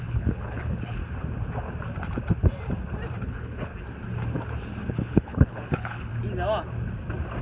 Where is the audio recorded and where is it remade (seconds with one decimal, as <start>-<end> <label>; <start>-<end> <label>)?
0.0-1.0 remade; 1.0-3.2 recorded; 3.2-3.7 remade; 3.7-4.9 recorded; 4.9-6.1 remade; 6.1-7.4 recorded